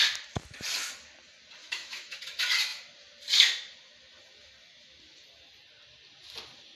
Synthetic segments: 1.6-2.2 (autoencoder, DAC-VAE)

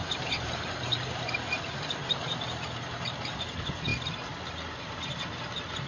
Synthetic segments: 0.0-3.5 (vocoder, BigVGAN v2)

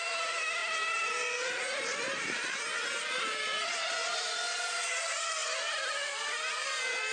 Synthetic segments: 0.0-0.6 (vocoder, BigVGAN v2); 1.8-7.1

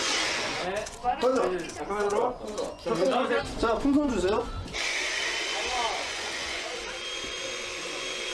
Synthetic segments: 0.0-1.3 (vocoder, Vocos); 1.8-8.3

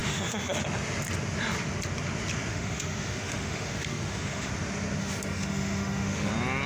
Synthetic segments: 0.0-0.6 (autoencoder, DAC-VAE); 2.5-4.5; 5.0-6.3

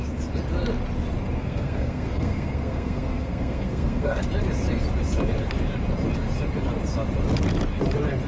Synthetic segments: 1.4-4.2 (codec, SNAC)

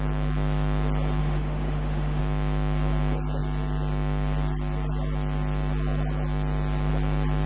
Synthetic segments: 1.2-2.2 (autoencoder, DAC-VAE)

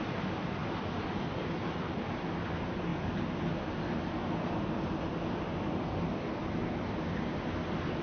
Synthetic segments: 0.0-2.9 (vocoder, BigVGAN v2); 5.6-8.0